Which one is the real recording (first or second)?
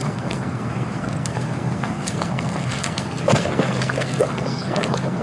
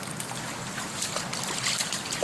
second